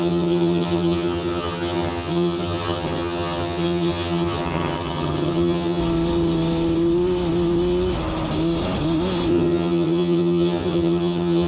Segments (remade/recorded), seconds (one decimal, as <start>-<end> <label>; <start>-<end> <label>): 0.0-5.8 remade; 5.8-9.3 recorded; 9.3-11.5 remade